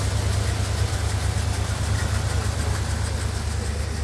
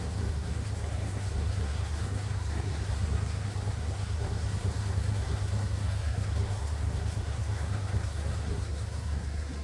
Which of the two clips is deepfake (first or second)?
second